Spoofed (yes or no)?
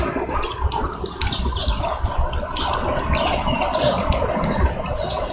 no